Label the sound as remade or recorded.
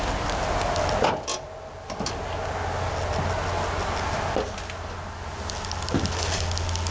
recorded